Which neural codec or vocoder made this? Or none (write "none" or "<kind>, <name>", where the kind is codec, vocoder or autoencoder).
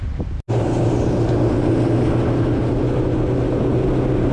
none